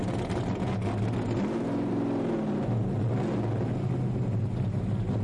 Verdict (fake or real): real